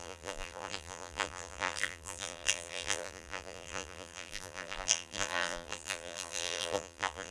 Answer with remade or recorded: remade